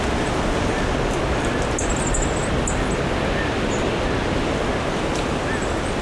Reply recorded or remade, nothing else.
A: recorded